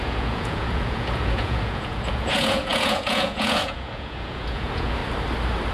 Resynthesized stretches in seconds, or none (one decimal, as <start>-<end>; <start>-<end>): 0.0-5.0